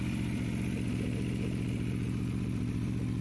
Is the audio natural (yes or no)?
no